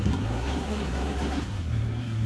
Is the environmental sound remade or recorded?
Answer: remade